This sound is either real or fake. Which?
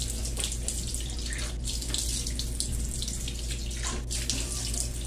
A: real